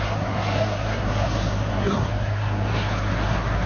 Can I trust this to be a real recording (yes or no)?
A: no